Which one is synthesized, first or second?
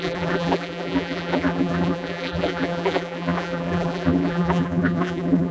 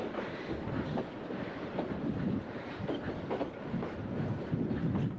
first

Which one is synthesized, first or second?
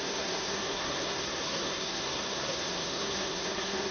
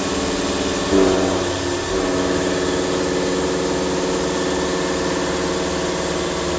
first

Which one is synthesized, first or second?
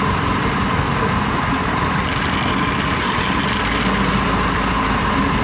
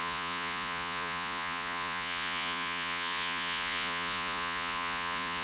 second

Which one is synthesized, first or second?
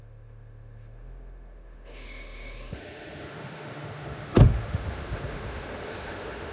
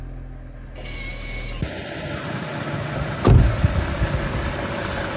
first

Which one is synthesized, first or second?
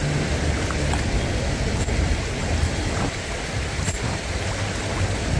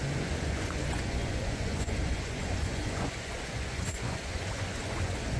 second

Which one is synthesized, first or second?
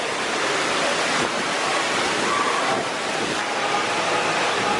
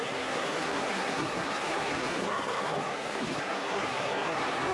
second